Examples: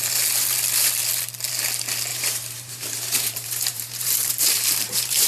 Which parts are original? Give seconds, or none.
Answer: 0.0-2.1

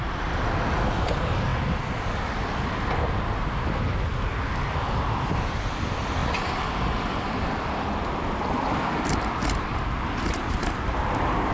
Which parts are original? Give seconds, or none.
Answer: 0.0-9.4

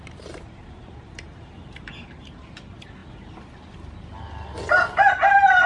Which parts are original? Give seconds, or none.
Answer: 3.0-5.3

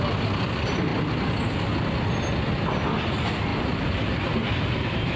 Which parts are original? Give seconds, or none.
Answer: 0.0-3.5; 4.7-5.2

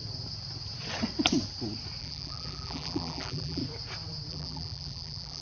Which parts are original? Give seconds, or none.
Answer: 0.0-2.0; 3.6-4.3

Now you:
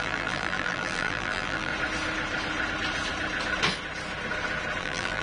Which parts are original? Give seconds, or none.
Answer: 1.7-4.8